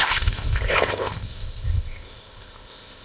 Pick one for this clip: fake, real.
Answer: fake